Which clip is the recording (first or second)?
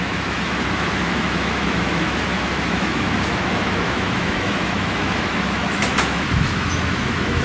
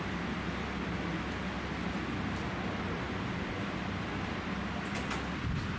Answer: second